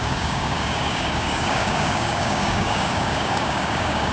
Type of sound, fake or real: fake